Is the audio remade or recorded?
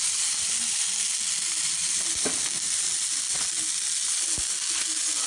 recorded